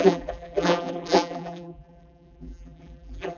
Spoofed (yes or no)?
yes